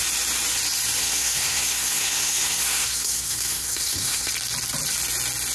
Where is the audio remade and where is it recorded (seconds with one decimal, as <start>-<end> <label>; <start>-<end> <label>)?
0.0-1.0 recorded; 1.0-4.3 remade; 4.3-5.5 recorded